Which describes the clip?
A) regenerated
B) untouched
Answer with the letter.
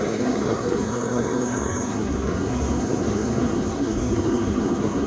A